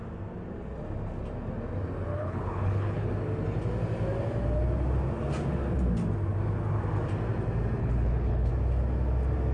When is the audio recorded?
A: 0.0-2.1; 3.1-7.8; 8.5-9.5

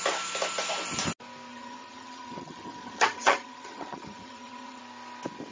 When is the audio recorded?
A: 0.0-1.5; 4.8-5.5